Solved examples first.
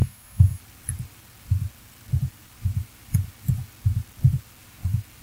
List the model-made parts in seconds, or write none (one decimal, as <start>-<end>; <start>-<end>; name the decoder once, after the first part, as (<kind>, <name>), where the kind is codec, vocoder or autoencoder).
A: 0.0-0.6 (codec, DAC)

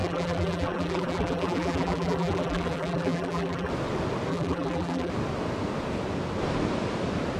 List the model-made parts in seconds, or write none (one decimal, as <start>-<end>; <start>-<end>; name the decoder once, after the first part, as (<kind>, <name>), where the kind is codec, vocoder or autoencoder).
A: 0.0-3.7 (vocoder, BigVGAN v2); 4.3-5.1

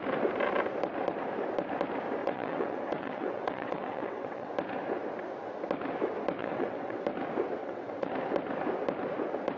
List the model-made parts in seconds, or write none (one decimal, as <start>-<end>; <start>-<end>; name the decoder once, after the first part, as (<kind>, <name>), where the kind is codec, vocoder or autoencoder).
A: 2.2-4.5 (vocoder, WaveNeXt); 6.4-7.0; 7.6-8.1

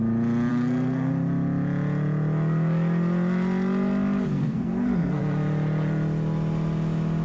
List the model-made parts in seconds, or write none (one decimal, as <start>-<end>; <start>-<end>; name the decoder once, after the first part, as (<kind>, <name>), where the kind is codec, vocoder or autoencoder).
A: 0.5-1.1 (codec, SNAC); 4.3-5.2